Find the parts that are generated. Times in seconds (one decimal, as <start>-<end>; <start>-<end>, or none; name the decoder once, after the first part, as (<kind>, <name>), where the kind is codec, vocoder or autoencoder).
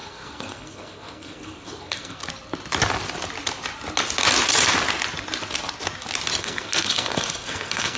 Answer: 0.0-2.2 (codec, SNAC); 6.4-8.0